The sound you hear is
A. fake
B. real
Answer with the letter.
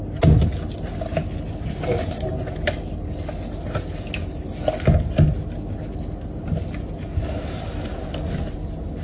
B